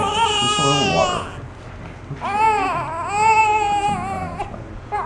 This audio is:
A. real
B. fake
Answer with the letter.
A